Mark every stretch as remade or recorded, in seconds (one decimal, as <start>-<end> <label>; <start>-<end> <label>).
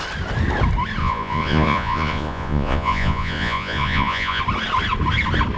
0.0-1.0 recorded; 1.0-4.4 remade; 4.4-5.6 recorded